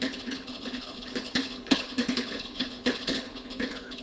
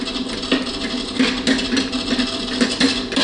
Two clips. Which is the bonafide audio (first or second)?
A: second